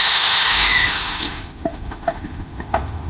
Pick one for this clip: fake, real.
fake